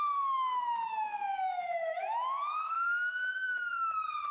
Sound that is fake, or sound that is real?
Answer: fake